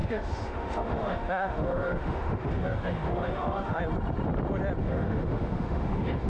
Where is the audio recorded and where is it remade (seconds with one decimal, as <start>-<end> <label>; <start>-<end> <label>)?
0.0-3.8 remade; 3.8-4.8 recorded; 4.8-6.3 remade